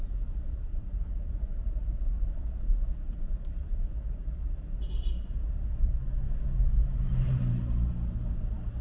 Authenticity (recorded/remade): remade